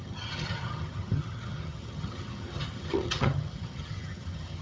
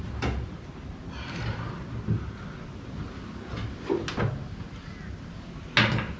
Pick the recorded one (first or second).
second